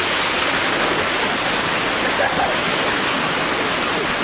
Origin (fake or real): real